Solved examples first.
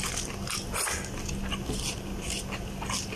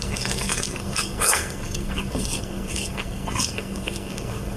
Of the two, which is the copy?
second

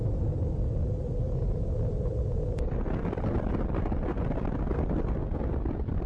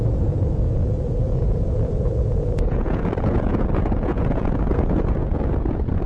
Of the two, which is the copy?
second